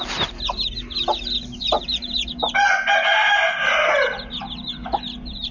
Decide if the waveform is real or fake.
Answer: real